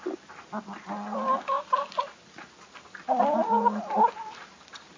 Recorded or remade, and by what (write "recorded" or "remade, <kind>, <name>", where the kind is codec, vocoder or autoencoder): recorded